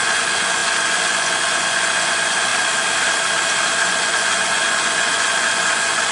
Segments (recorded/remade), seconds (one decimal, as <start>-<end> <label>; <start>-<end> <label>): 0.0-2.5 remade; 2.5-3.8 recorded; 3.8-6.1 remade